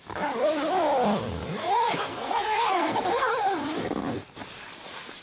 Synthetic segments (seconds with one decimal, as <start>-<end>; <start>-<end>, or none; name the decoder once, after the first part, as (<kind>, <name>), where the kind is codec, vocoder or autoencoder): 1.6-3.3 (codec, SNAC)